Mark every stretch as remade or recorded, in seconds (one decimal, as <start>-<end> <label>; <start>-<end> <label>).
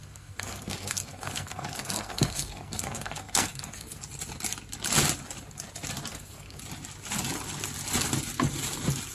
0.0-4.0 remade; 4.0-6.1 recorded; 6.1-6.6 remade; 6.6-9.1 recorded